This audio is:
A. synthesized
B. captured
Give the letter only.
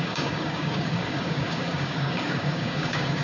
A